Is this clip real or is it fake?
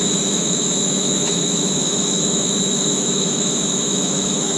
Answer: fake